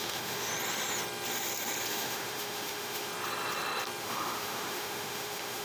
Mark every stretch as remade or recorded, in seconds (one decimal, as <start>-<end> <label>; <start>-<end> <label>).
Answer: 0.0-0.5 remade; 0.5-1.9 recorded; 1.9-3.1 remade; 3.1-4.0 recorded; 4.0-5.6 remade

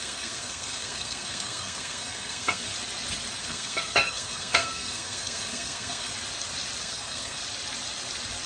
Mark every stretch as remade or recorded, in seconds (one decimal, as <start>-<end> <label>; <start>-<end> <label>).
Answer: 0.0-2.7 remade; 2.7-3.4 recorded; 3.4-6.1 remade; 6.1-6.8 recorded; 6.8-7.4 remade; 7.4-8.5 recorded